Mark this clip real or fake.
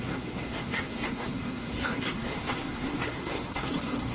fake